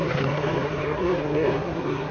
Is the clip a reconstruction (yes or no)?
yes